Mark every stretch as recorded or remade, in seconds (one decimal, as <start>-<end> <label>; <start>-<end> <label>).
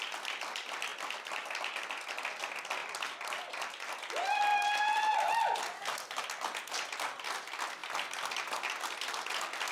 0.0-9.7 recorded